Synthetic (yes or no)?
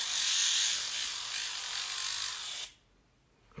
no